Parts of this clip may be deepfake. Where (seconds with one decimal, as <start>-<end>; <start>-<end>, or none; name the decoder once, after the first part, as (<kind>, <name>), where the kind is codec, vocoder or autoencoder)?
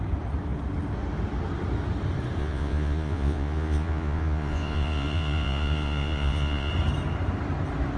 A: 2.4-6.7 (vocoder, Vocos)